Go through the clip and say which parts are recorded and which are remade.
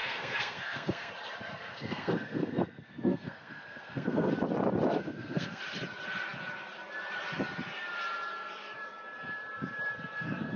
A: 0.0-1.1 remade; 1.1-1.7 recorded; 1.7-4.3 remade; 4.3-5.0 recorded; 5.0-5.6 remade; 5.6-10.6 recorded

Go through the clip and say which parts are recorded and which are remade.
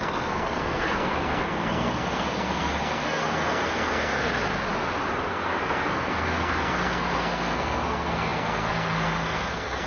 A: 0.0-4.4 remade; 4.4-5.3 recorded; 5.3-9.9 remade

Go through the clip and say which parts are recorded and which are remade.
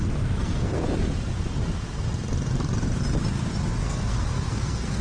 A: 0.0-0.8 remade; 0.8-3.8 recorded; 3.8-5.0 remade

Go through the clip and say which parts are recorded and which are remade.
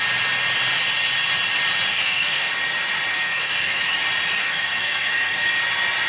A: 0.0-1.9 recorded; 1.9-2.5 remade; 2.5-3.1 recorded; 3.1-3.8 remade; 3.8-4.4 recorded; 4.4-5.6 remade; 5.6-6.1 recorded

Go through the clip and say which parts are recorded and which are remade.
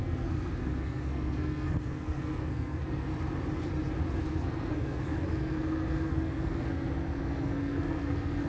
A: 0.0-3.1 remade; 3.1-4.2 recorded; 4.2-8.5 remade